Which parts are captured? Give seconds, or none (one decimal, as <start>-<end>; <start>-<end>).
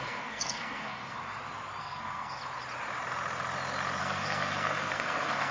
1.2-1.8; 2.4-4.0